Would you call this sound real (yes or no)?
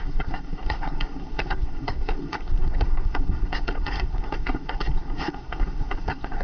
no